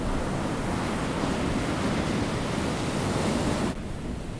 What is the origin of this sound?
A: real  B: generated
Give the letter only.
A